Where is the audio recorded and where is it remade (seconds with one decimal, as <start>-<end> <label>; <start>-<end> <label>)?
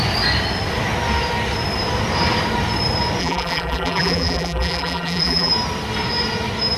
0.0-3.2 recorded; 3.2-5.5 remade; 5.5-6.8 recorded